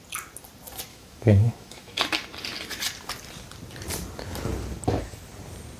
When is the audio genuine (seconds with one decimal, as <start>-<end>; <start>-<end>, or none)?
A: 0.0-0.9; 2.0-5.8